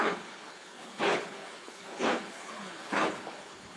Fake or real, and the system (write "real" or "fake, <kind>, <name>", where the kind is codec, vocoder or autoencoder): fake, codec, HILCodec